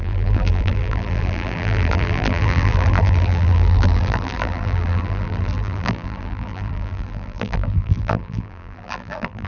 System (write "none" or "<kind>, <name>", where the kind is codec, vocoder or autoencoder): vocoder, BigVGAN v2